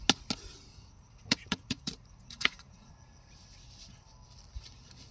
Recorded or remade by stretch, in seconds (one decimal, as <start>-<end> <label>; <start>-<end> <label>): 0.0-0.7 recorded; 0.7-2.9 remade; 2.9-5.1 recorded

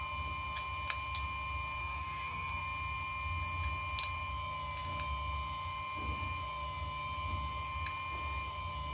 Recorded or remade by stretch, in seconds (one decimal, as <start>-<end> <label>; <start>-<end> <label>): 0.0-1.8 recorded; 1.8-2.6 remade; 2.6-8.9 recorded

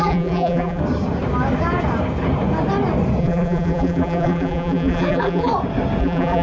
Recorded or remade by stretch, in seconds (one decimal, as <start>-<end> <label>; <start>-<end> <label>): 0.0-0.8 remade; 0.8-3.2 recorded; 3.2-5.5 remade; 5.5-6.0 recorded; 6.0-6.4 remade

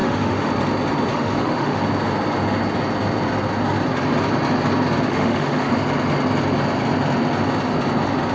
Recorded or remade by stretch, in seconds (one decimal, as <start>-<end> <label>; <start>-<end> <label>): 0.0-0.5 remade; 0.5-1.1 recorded; 1.1-1.8 remade; 1.8-5.1 recorded; 5.1-5.7 remade; 5.7-8.3 recorded

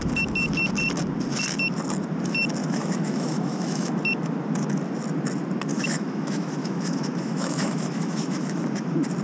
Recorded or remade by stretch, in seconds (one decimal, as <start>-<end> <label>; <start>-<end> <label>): 0.0-2.6 recorded; 2.6-3.9 remade; 3.9-5.7 recorded; 5.7-8.6 remade; 8.6-9.2 recorded

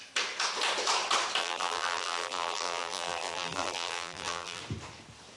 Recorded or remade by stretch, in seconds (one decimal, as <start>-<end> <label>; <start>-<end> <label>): 0.0-1.4 recorded; 1.4-4.6 remade; 4.6-5.4 recorded

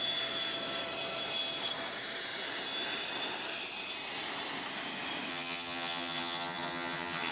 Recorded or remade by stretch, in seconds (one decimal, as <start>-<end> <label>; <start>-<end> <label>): 0.0-5.3 recorded; 5.3-7.3 remade